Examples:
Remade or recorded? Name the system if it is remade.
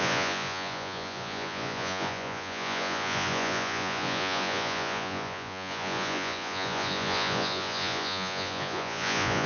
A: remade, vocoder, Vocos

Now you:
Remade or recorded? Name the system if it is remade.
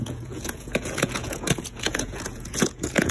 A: remade, vocoder, Vocos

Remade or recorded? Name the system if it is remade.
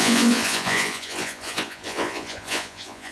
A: remade, vocoder, Vocos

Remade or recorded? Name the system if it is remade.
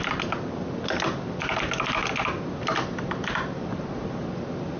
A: recorded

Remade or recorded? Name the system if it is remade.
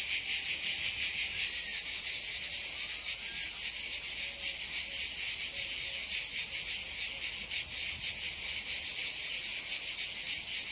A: recorded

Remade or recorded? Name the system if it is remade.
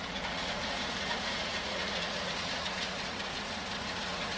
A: remade, vocoder, Vocos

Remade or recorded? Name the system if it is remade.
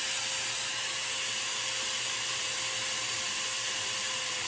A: recorded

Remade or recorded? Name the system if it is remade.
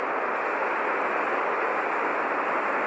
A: recorded